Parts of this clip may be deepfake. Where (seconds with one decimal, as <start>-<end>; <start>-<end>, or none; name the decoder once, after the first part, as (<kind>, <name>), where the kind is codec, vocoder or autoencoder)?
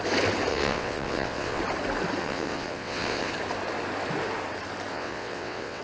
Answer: 0.5-1.6 (vocoder, WaveNeXt); 2.2-3.3; 4.9-5.8